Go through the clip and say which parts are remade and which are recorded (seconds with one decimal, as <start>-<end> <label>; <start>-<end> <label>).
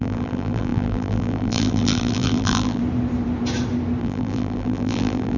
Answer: 0.0-2.8 remade; 2.8-4.0 recorded; 4.0-5.4 remade